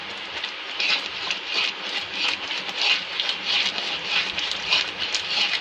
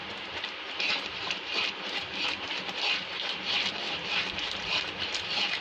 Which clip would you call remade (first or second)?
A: second